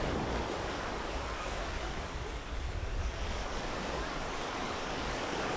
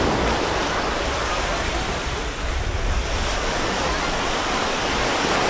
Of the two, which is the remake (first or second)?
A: first